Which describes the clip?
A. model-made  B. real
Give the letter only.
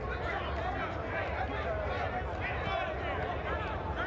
B